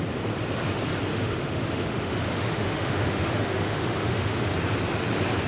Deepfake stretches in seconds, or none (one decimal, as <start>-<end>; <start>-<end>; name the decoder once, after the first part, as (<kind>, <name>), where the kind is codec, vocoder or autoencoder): 1.1-4.4 (autoencoder, DAC-VAE)